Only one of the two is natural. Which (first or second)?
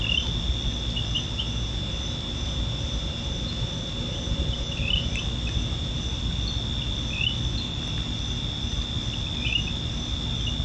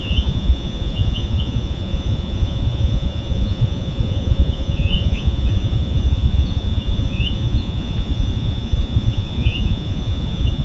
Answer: first